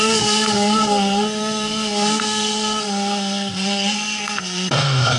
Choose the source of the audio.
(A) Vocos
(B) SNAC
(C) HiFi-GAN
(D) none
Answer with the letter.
B